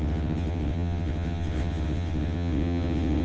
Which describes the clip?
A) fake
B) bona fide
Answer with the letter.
A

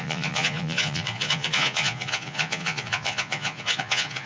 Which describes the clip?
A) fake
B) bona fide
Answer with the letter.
A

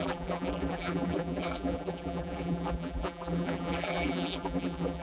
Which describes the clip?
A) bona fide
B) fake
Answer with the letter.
B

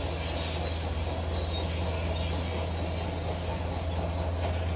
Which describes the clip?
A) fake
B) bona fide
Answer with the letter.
B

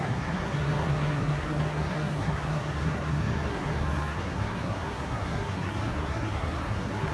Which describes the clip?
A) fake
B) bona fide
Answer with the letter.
A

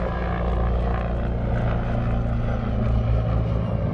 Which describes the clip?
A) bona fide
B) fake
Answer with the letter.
A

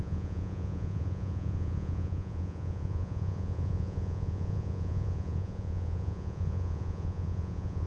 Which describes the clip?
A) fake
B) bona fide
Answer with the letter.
A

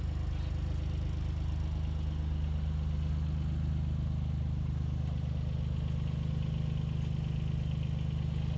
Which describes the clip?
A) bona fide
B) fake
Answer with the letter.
A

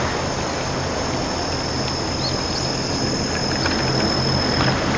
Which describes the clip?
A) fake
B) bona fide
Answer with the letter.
B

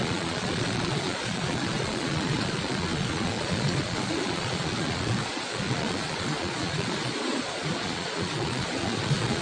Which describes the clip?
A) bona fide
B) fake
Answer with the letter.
B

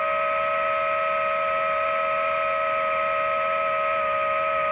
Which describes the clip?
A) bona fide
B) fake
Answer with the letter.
A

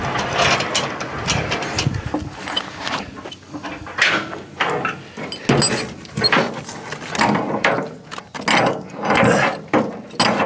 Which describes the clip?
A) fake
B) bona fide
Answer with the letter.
B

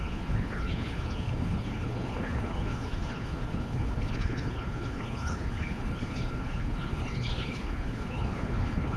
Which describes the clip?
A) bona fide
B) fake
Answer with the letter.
B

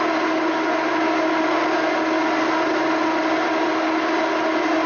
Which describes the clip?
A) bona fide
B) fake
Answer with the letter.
A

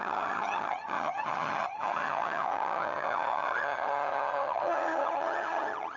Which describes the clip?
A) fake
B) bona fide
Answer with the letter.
A